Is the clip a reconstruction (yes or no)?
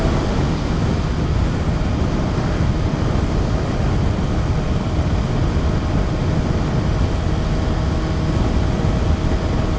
no